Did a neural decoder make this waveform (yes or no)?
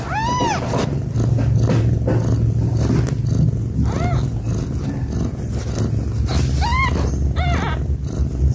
no